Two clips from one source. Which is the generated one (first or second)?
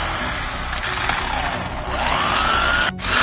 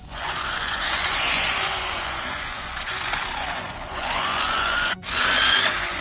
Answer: second